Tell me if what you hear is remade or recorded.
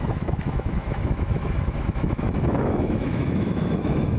remade